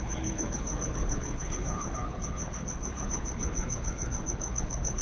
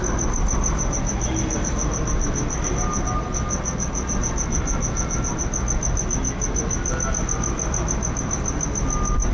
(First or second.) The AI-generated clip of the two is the first